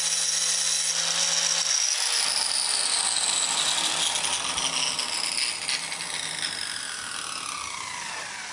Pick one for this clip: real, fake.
real